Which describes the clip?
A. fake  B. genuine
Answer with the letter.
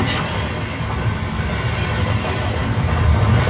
B